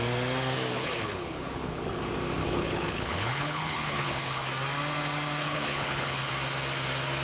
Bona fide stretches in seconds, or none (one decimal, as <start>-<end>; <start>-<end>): 0.0-0.7; 2.0-2.4; 4.5-5.4; 6.3-7.2